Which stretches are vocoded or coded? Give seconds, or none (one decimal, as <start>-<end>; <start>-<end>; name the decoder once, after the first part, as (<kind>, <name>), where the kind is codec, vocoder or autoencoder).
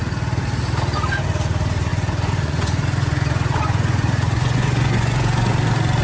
1.9-5.5 (vocoder, Vocos)